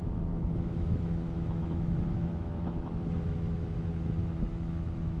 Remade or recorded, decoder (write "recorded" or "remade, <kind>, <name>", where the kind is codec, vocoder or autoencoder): remade, autoencoder, DAC-VAE